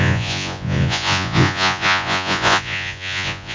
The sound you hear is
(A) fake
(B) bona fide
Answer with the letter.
A